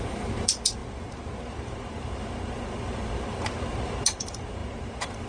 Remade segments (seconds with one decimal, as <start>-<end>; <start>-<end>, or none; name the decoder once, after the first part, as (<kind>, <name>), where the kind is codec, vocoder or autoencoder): 0.0-5.3 (vocoder, BigVGAN v2)